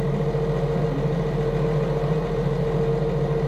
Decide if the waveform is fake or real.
real